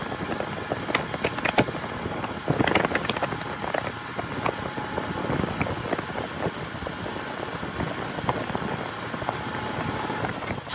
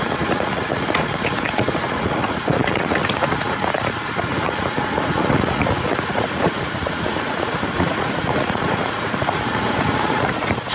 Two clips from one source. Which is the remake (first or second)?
second